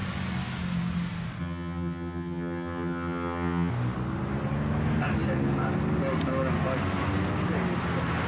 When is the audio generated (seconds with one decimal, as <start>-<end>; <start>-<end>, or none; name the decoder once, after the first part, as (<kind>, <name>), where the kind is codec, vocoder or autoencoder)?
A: 1.4-3.7 (vocoder, HiFi-GAN)